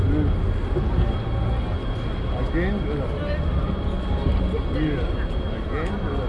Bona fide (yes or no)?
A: yes